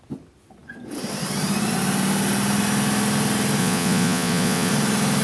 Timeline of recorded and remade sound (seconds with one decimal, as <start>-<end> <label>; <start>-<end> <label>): 0.0-3.6 recorded; 3.6-4.7 remade; 4.7-5.2 recorded